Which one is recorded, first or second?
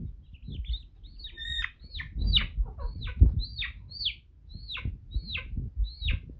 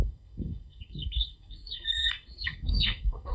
first